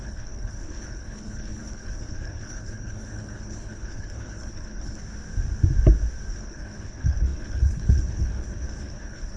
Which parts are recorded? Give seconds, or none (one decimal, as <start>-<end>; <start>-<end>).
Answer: 5.0-6.3